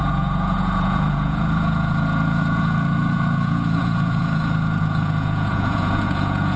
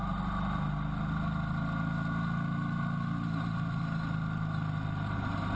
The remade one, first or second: first